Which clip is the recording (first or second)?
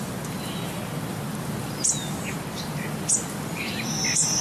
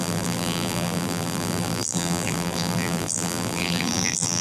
first